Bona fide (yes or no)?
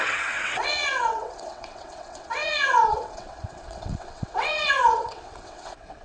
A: no